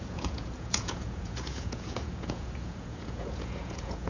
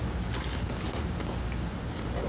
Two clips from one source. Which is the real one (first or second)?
second